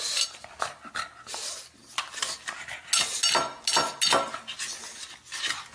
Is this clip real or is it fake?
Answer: real